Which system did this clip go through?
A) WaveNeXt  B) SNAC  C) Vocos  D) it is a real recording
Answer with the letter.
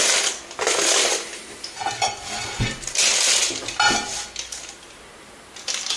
D